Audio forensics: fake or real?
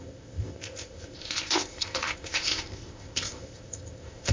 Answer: fake